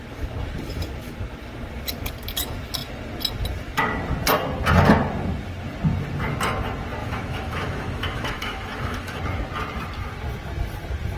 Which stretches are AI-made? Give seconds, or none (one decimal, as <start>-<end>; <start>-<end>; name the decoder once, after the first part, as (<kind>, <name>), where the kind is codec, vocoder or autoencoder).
7.0-9.2 (autoencoder, DAC-VAE)